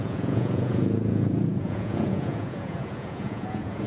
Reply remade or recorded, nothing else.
remade